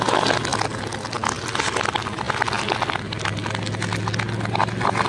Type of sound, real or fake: real